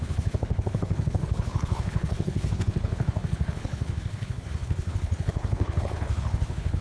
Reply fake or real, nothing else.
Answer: fake